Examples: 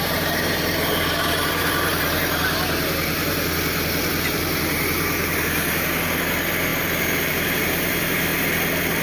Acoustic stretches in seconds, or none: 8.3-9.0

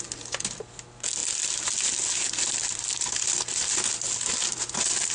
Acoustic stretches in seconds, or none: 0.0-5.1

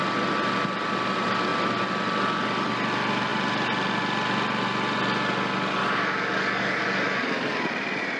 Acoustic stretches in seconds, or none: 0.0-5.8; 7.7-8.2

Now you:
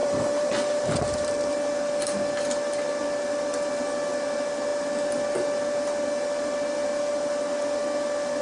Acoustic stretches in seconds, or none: 1.3-8.4